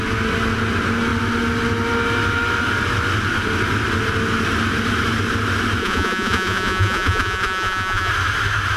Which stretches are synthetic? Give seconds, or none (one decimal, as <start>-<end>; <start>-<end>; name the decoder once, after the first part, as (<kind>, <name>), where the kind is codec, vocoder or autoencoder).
5.8-8.1 (vocoder, Vocos)